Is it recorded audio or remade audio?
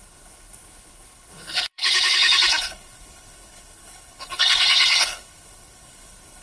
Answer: remade